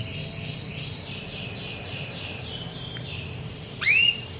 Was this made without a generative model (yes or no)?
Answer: no